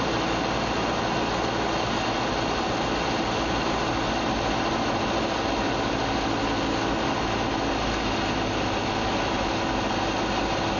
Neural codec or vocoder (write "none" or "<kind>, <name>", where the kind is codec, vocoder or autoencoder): none